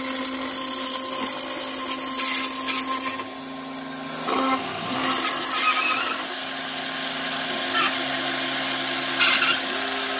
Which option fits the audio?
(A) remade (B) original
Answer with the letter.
B